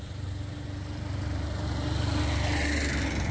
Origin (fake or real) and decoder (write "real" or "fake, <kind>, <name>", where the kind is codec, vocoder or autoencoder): real